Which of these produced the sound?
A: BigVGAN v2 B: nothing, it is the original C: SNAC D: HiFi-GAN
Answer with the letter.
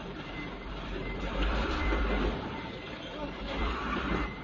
A